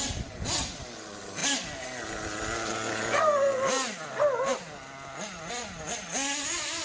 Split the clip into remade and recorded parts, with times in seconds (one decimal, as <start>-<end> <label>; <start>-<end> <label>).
0.0-6.8 recorded